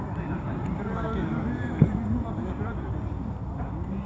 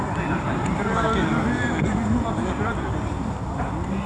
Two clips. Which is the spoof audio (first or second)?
first